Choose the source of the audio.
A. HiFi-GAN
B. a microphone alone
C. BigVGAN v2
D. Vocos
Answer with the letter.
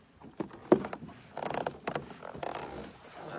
B